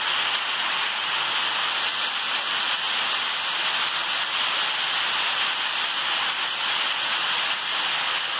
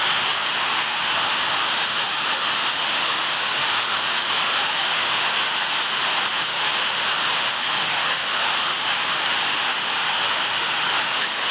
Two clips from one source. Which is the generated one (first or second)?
second